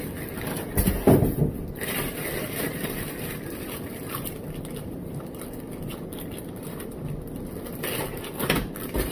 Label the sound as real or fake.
fake